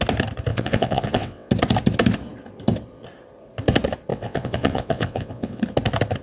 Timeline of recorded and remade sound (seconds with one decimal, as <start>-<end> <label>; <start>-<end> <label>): 0.0-0.5 recorded; 0.5-1.5 remade; 1.5-4.1 recorded; 4.1-5.6 remade; 5.6-6.2 recorded